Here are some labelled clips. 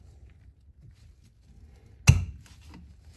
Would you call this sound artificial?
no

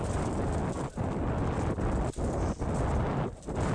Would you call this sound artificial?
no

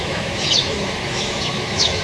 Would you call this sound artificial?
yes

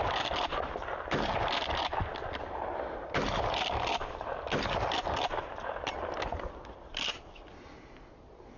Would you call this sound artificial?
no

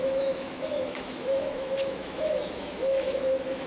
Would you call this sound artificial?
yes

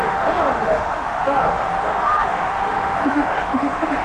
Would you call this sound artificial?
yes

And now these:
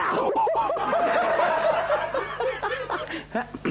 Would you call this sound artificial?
no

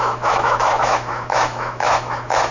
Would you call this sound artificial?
yes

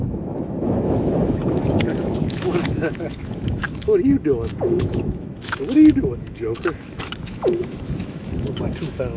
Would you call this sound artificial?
yes